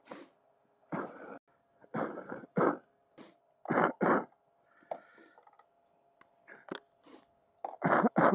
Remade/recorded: recorded